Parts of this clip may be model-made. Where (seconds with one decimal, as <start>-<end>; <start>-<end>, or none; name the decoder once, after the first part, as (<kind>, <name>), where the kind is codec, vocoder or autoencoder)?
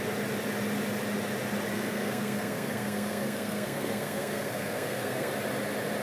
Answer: 1.7-5.3 (codec, SNAC)